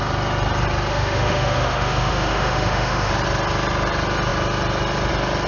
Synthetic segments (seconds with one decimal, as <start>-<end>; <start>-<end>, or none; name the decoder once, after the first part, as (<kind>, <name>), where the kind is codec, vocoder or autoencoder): 0.9-3.1 (autoencoder, DAC-VAE)